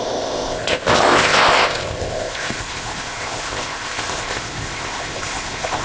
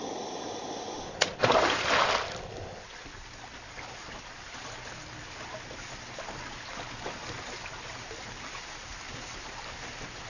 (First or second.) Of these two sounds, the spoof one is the first